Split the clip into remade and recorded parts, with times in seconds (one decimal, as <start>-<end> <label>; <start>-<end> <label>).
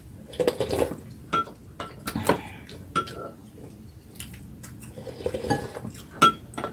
0.0-3.4 recorded; 3.4-4.4 remade; 4.4-6.7 recorded